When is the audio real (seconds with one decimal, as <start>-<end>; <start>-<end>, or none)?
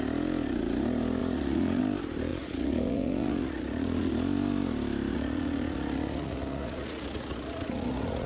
0.0-1.2; 1.8-2.3; 4.1-5.1